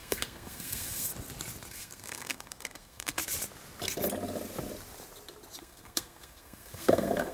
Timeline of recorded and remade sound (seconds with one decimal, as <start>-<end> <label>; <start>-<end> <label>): 0.0-1.1 remade; 1.1-1.7 recorded; 1.7-3.2 remade; 3.2-5.6 recorded; 5.6-7.3 remade